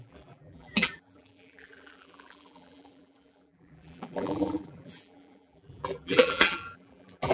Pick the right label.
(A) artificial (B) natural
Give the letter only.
A